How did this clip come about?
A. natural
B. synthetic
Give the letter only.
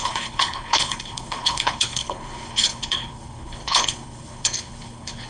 B